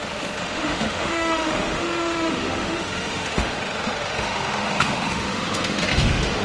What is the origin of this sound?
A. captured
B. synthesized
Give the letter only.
B